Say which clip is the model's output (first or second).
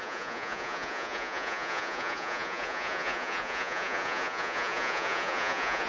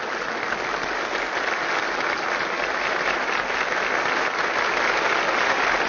first